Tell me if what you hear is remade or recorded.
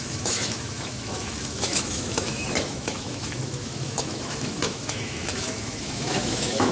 remade